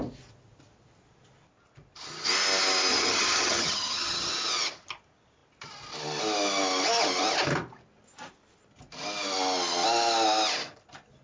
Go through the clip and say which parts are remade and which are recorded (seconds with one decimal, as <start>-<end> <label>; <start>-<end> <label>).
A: 0.0-2.9 recorded; 2.9-4.3 remade; 4.3-11.2 recorded

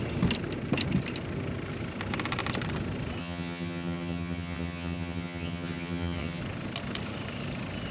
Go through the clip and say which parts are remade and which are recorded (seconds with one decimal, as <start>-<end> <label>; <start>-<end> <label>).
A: 0.0-3.2 recorded; 3.2-6.4 remade; 6.4-7.9 recorded

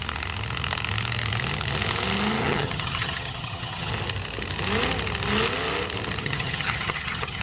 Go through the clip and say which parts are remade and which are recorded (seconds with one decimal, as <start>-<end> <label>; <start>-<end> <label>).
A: 0.0-2.4 recorded; 2.4-3.9 remade; 3.9-6.2 recorded; 6.2-7.4 remade

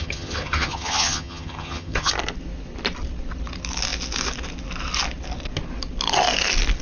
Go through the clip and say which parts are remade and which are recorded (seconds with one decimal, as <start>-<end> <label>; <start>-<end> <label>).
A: 0.0-2.1 remade; 2.1-6.8 recorded